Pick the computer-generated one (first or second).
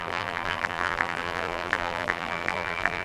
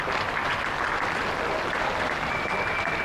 first